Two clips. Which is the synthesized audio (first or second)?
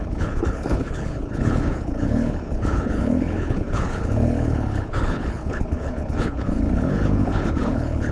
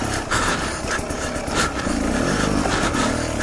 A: first